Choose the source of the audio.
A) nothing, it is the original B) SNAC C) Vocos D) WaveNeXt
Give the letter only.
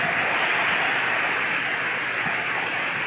A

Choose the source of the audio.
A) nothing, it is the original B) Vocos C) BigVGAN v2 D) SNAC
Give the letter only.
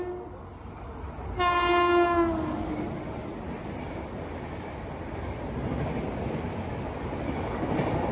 A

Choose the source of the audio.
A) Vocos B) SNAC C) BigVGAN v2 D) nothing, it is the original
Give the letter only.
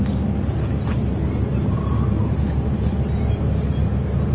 D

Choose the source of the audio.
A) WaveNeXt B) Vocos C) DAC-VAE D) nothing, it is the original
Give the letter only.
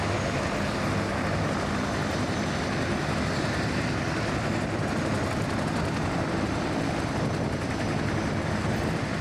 D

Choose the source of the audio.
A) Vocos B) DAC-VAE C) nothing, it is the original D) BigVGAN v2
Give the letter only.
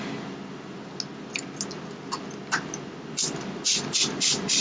C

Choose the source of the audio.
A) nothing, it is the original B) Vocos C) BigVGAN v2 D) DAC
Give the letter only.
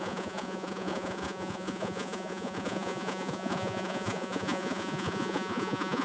B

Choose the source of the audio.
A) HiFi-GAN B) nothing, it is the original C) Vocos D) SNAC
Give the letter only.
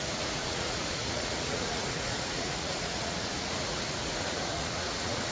C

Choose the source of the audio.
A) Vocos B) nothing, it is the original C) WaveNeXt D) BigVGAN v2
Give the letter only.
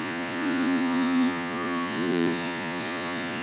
A